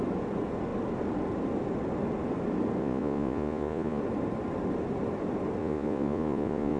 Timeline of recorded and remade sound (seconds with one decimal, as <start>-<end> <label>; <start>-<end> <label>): 0.0-2.8 recorded; 2.8-4.0 remade; 4.0-5.6 recorded; 5.6-6.8 remade